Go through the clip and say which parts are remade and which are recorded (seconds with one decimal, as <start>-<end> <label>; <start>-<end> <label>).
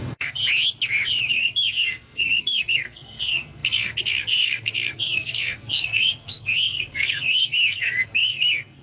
0.0-0.4 remade; 0.4-1.3 recorded; 1.3-8.8 remade